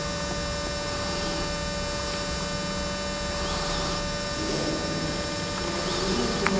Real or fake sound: real